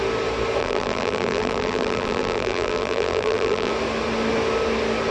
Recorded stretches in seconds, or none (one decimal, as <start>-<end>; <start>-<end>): 0.0-0.6; 3.7-5.1